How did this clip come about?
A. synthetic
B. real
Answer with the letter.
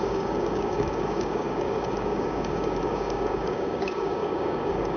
A